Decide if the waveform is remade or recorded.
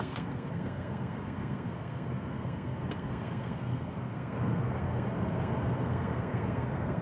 remade